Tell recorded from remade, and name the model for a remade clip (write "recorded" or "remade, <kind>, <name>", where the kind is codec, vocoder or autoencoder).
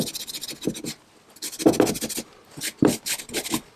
recorded